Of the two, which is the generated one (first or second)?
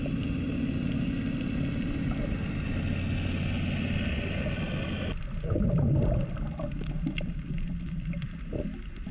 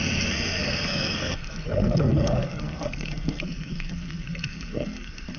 second